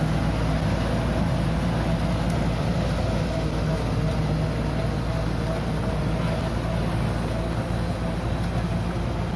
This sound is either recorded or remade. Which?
recorded